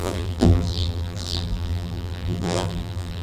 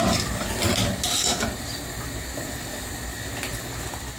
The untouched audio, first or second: second